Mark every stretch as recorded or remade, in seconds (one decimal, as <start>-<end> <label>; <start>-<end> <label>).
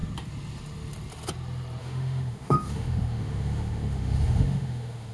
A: 0.0-1.8 recorded; 1.8-5.1 remade